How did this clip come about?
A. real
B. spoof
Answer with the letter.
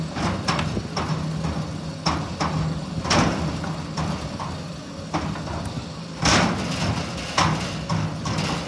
A